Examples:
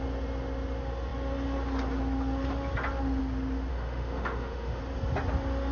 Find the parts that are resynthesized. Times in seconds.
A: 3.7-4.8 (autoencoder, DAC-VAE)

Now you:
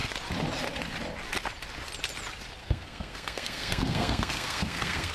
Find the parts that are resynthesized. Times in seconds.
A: 2.6-5.1 (codec, SNAC)

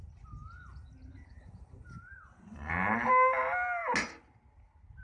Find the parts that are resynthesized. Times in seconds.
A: 1.3-3.1 (vocoder, BigVGAN v2)

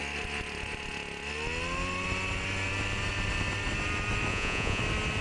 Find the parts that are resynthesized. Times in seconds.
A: 4.3-4.8 (vocoder, Vocos)